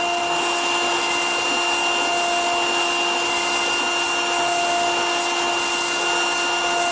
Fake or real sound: real